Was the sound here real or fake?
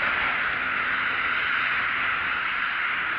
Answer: real